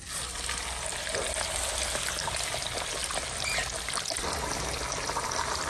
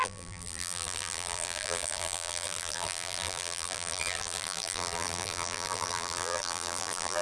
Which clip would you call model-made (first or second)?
second